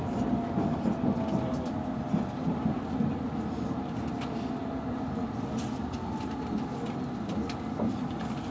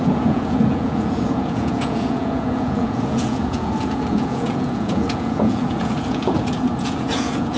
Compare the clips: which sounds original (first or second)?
first